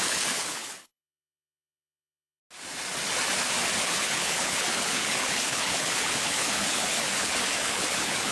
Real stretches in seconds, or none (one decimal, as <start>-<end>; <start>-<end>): 2.4-3.8